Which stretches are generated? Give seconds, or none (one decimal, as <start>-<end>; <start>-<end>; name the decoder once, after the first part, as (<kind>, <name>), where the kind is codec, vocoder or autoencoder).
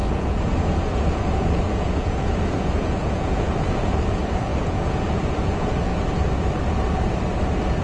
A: 0.0-5.9 (vocoder, Vocos)